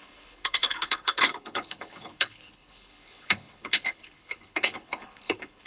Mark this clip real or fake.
fake